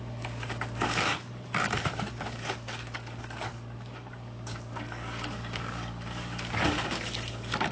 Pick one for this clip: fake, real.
fake